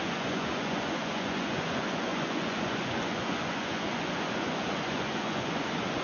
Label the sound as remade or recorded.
remade